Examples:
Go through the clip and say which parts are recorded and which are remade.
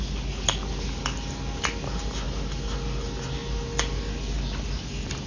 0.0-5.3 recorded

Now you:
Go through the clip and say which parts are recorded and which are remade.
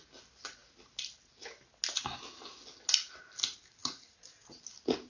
0.0-3.8 recorded; 3.8-4.6 remade; 4.6-5.1 recorded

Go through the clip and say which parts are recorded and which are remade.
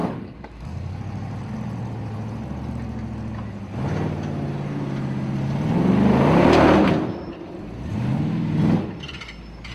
0.0-1.0 remade; 1.0-9.7 recorded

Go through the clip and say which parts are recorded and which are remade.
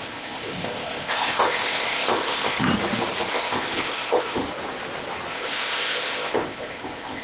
0.0-2.7 remade; 2.7-3.3 recorded; 3.3-4.4 remade; 4.4-5.3 recorded; 5.3-7.2 remade